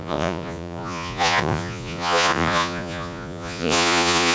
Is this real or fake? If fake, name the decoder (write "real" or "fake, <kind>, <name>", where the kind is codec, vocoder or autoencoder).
fake, vocoder, Vocos